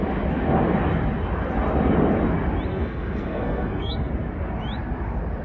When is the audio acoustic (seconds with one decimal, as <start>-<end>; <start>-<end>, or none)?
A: 0.0-2.7; 4.1-5.4